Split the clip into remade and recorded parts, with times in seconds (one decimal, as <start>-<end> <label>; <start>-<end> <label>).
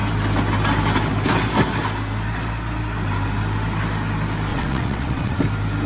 0.0-4.5 recorded; 4.5-5.4 remade; 5.4-5.9 recorded